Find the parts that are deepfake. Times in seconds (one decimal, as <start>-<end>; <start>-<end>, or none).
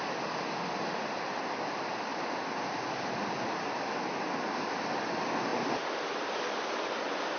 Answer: none